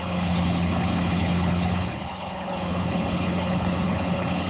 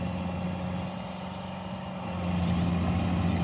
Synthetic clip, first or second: first